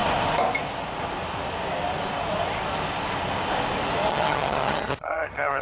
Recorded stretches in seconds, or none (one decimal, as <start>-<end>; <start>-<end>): 0.0-4.1